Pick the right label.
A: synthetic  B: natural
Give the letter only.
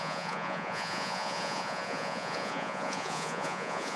A